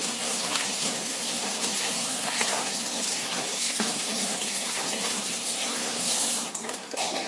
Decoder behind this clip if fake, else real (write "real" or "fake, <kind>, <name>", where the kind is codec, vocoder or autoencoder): fake, codec, SNAC